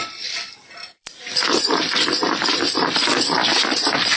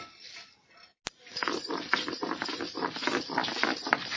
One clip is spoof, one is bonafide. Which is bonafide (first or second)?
second